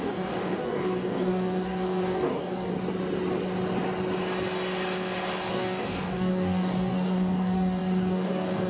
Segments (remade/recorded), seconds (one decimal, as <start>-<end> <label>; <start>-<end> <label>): 0.0-2.7 remade; 2.7-5.5 recorded; 5.5-8.7 remade